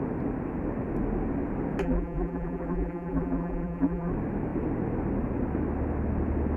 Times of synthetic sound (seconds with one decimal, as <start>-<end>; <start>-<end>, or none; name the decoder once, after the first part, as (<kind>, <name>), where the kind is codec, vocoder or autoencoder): 1.8-4.1 (vocoder, BigVGAN v2)